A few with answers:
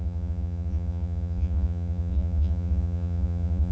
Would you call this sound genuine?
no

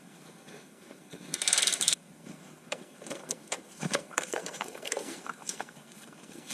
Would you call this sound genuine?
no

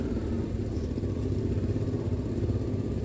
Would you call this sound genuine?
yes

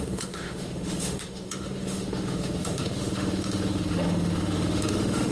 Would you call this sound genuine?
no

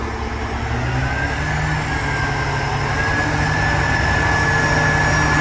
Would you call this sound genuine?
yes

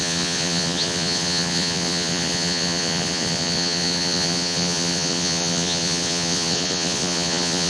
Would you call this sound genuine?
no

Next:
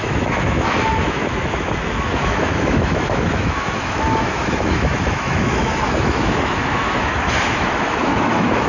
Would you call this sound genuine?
no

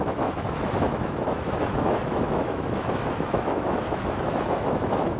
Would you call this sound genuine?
no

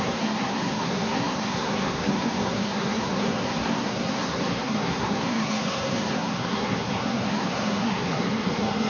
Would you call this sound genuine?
no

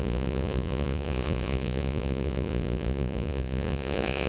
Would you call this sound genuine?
no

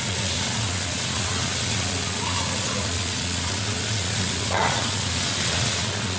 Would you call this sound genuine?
no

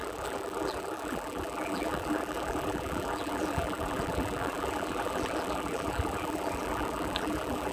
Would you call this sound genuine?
no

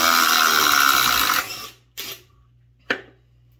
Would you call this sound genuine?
yes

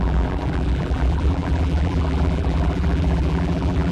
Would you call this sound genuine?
no